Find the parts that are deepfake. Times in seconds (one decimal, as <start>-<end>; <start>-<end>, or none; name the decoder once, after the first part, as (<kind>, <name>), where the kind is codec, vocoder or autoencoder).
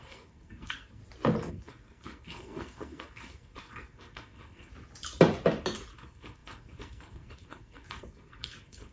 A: 0.0-1.0 (codec, SNAC); 1.5-4.7; 5.9-8.9